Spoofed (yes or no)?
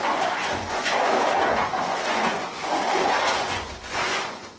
yes